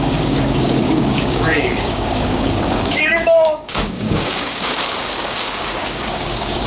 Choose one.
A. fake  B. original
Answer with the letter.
A